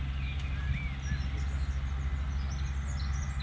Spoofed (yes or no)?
no